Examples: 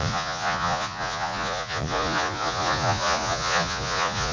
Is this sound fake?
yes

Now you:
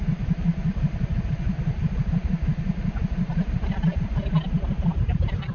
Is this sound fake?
no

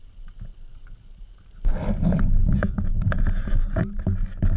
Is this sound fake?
no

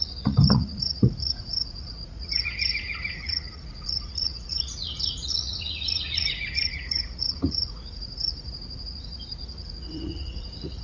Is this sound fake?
yes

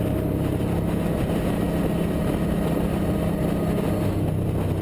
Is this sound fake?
no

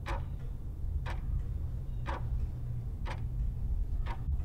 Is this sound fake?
no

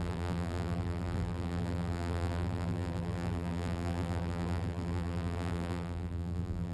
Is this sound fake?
yes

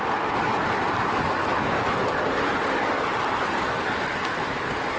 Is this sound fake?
no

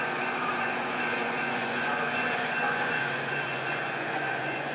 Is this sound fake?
yes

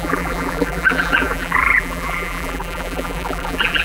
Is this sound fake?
yes